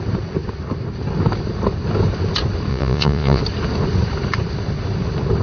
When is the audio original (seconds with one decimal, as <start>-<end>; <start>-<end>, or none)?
0.0-2.7; 3.4-5.4